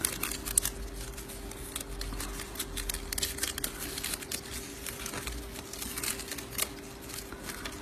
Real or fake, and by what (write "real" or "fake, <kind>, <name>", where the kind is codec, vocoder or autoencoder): real